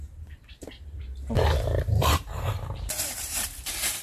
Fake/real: fake